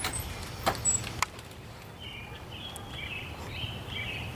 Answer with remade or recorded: recorded